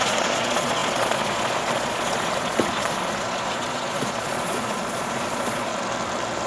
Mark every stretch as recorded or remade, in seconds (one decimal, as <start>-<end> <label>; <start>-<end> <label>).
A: 0.0-5.7 remade; 5.7-6.5 recorded